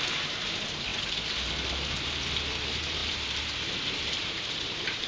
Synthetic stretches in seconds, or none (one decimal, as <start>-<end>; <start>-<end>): 0.0-0.9; 2.5-5.1